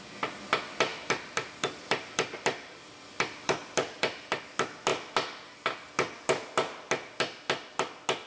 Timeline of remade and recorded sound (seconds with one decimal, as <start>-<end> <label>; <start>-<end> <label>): 0.0-0.9 recorded; 0.9-4.4 remade; 4.4-8.3 recorded